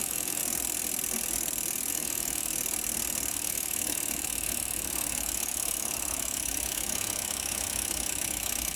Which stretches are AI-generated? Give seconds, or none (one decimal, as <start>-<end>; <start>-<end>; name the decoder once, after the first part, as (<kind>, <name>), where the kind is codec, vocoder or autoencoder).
0.0-0.4 (autoencoder, DAC-VAE); 1.9-2.5; 3.3-8.8